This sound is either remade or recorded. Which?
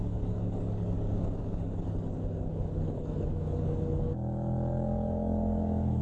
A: remade